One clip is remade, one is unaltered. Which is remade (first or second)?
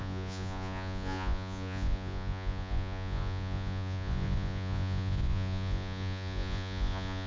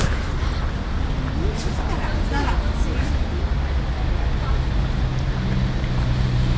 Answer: first